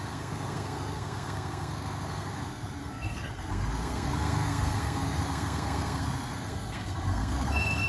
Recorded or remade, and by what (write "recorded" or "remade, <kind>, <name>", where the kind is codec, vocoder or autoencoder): remade, codec, SNAC